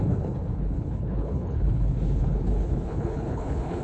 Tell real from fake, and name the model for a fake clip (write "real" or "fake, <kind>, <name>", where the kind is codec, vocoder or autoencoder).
fake, codec, HILCodec